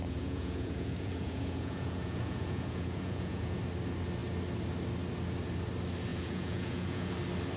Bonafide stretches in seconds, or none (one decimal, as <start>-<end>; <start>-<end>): 3.6-6.1; 7.1-7.6